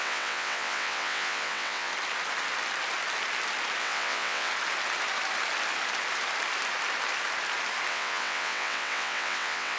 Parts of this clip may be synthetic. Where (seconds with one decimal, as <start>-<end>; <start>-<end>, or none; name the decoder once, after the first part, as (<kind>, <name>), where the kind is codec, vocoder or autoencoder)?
0.0-1.9 (vocoder, WaveNeXt); 3.8-4.5; 7.9-9.8